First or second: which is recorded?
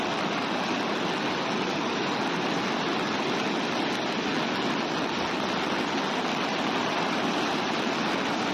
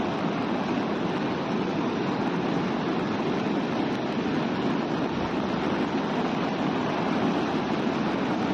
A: second